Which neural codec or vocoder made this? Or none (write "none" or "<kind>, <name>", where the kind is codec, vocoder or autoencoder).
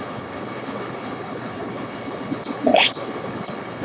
codec, HILCodec